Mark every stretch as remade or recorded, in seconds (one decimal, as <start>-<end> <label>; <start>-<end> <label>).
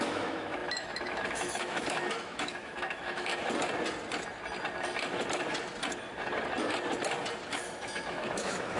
0.0-3.3 remade; 3.3-7.5 recorded; 7.5-8.8 remade